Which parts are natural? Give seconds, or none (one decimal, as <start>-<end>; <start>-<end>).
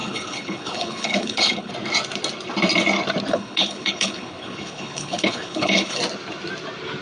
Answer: 1.7-3.3; 6.0-7.0